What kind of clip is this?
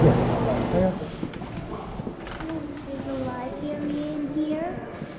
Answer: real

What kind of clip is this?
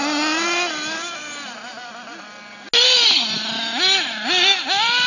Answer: real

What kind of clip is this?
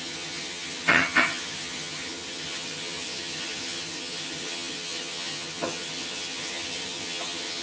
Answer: fake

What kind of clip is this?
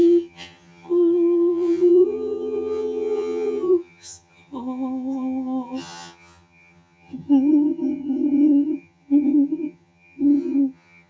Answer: fake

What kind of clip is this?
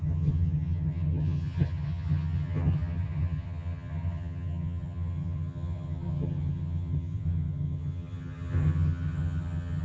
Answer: fake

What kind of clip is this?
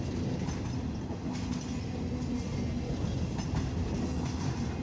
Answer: real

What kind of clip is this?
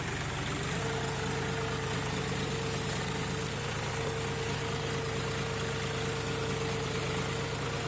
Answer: real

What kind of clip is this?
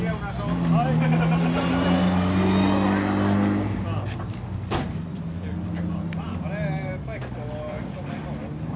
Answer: real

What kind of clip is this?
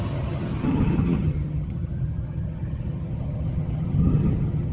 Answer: fake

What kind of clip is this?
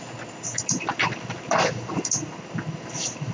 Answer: real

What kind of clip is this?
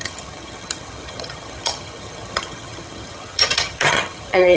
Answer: fake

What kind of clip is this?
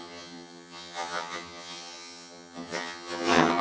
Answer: fake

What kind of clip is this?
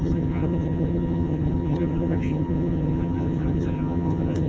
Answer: fake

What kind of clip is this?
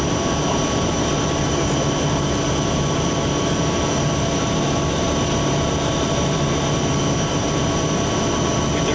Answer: real